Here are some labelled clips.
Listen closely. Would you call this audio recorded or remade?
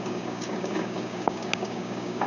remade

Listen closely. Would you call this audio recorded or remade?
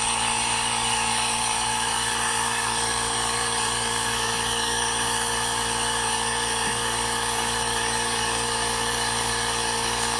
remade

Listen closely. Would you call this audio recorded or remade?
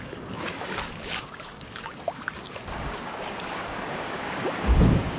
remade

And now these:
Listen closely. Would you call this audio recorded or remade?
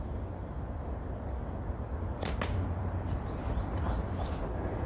recorded